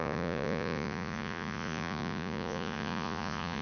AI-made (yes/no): yes